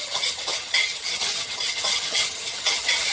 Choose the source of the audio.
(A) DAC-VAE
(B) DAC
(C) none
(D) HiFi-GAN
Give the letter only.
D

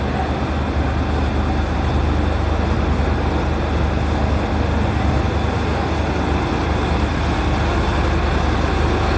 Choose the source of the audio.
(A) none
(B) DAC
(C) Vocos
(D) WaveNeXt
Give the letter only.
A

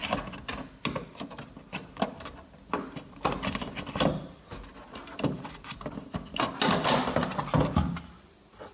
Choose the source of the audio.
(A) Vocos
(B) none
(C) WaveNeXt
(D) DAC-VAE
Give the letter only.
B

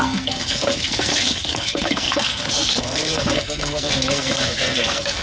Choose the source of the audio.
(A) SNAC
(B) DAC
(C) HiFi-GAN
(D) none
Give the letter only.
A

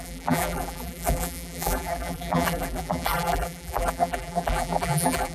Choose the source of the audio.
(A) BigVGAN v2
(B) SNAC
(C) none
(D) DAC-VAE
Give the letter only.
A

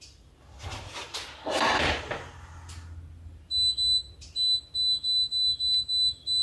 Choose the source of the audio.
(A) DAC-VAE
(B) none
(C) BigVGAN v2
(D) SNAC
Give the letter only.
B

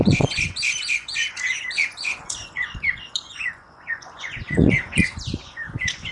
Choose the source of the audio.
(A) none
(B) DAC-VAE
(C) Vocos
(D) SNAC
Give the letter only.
C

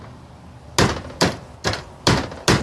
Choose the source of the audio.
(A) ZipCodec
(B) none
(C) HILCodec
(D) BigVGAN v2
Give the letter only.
B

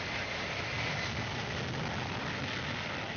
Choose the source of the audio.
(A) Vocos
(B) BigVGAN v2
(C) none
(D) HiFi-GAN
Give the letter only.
C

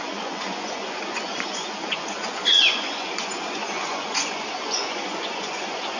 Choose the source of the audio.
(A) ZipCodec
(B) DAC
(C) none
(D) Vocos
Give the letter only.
D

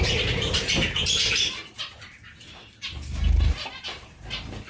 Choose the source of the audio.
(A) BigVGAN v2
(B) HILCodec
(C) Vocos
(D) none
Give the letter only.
D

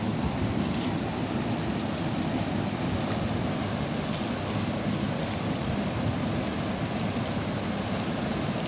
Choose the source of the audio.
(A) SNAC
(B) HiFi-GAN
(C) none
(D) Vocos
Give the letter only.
C